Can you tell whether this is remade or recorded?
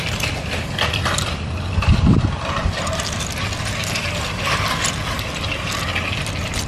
recorded